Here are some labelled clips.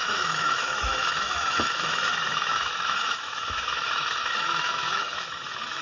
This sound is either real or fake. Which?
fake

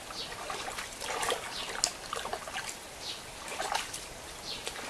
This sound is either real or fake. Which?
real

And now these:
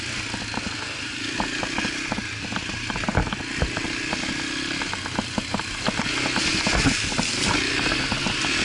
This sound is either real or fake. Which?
real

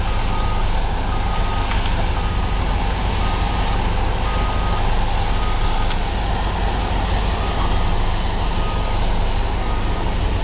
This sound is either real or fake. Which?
real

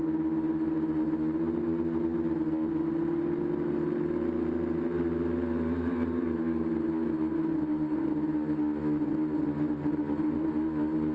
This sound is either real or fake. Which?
real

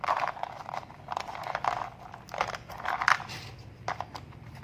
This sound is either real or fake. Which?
real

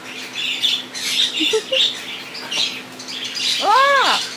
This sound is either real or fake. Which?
real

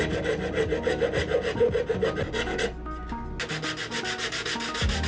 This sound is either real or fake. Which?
real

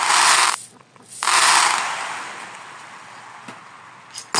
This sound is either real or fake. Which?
real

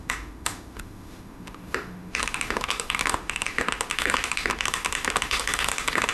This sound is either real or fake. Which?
fake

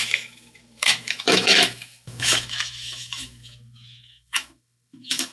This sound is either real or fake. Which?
fake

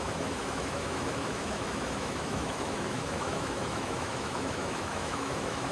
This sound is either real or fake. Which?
fake